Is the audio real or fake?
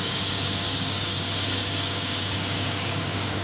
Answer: fake